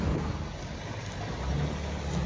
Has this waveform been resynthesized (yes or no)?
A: no